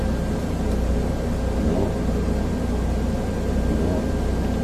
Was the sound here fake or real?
real